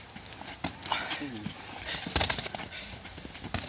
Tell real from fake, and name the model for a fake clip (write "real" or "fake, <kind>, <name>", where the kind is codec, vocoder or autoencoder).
real